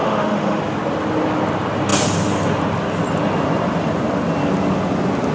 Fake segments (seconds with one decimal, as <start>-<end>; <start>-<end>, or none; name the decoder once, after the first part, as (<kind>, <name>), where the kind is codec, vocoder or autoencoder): 0.0-0.6 (autoencoder, DAC-VAE)